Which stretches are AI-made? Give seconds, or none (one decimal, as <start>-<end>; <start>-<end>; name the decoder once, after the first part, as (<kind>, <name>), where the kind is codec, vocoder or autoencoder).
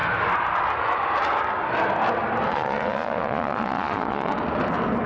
2.5-4.3 (vocoder, Vocos)